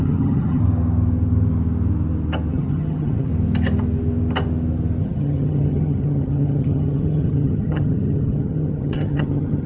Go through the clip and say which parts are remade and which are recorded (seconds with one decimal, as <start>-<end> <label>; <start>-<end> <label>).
0.0-0.6 remade; 0.6-2.5 recorded; 2.5-3.3 remade; 3.3-5.0 recorded; 5.0-9.7 remade